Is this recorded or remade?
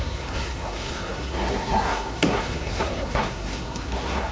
remade